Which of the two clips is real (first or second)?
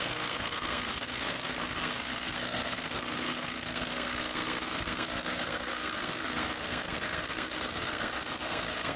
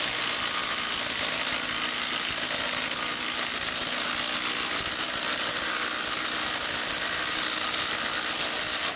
second